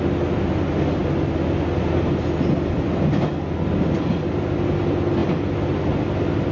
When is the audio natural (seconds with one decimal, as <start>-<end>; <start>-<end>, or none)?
0.0-6.5